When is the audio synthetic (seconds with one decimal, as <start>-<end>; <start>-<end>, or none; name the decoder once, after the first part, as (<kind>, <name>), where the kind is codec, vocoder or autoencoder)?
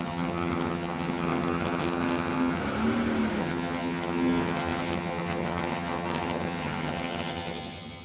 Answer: 0.0-2.6 (vocoder, HiFi-GAN); 3.4-8.0